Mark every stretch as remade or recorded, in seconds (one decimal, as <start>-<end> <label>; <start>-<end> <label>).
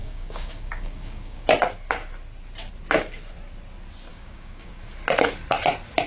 0.0-1.5 remade; 1.5-4.1 recorded; 4.1-4.7 remade; 4.7-6.1 recorded